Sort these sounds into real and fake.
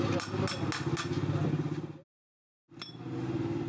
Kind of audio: real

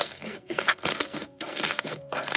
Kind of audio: fake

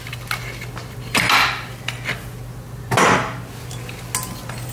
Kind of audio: real